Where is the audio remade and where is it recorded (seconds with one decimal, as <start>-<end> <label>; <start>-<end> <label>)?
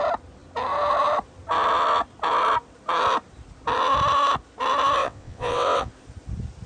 0.0-5.0 recorded; 5.0-5.9 remade; 5.9-6.7 recorded